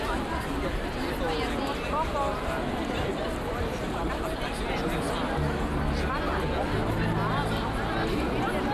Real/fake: real